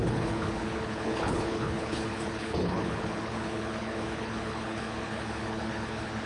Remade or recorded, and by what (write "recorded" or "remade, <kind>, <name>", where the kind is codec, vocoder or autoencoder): remade, codec, HILCodec